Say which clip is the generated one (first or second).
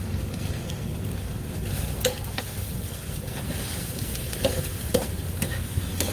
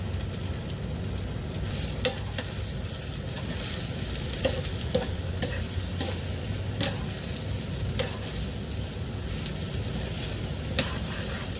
first